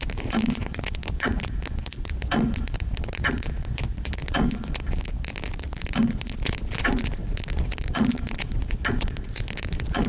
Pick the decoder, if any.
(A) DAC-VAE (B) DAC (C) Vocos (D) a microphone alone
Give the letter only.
C